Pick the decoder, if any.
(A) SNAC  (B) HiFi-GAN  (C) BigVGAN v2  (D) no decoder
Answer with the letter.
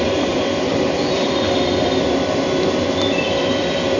C